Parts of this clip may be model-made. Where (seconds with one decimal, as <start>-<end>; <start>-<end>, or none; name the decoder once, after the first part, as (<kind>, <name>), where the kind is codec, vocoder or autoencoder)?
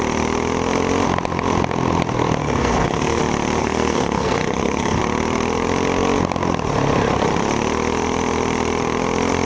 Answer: 2.4-3.2 (codec, SNAC); 3.6-5.0